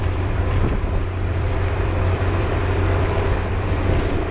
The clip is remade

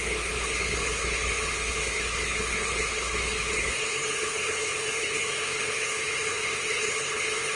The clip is remade